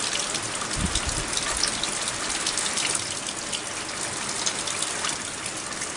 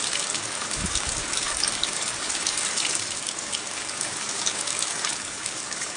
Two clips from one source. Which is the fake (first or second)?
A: second